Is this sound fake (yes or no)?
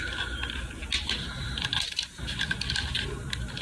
no